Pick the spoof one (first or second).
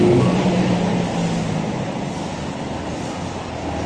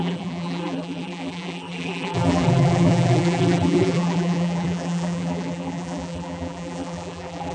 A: second